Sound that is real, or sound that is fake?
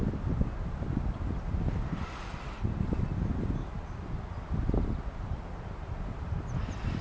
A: real